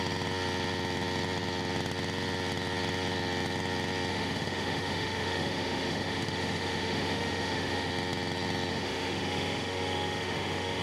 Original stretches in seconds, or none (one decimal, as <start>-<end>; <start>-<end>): 0.0-4.1; 7.9-8.7